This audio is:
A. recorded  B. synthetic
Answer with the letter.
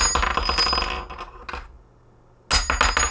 A